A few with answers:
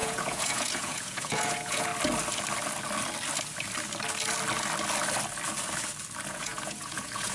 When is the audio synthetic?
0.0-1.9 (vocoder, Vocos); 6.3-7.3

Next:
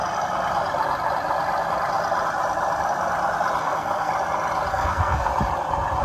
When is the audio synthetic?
3.6-4.1 (codec, SNAC); 4.7-5.3

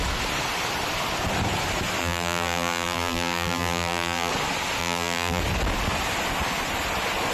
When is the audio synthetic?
2.0-4.3 (vocoder, BigVGAN v2); 4.8-5.4

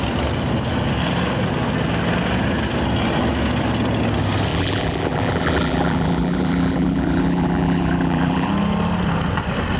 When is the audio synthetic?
4.5-8.5 (vocoder, BigVGAN v2)

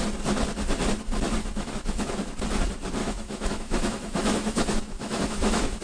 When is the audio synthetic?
1.4-2.0 (autoencoder, DAC-VAE); 3.0-5.8

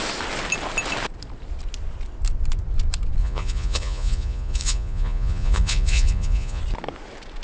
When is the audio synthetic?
3.2-6.6 (vocoder, Vocos)

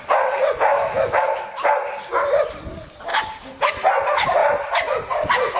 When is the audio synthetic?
0.7-1.4 (autoencoder, DAC-VAE)

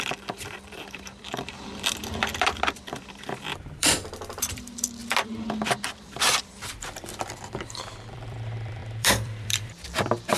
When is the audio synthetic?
0.0-5.0 (vocoder, BigVGAN v2); 5.9-10.4